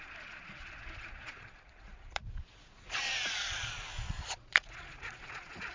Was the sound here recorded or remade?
remade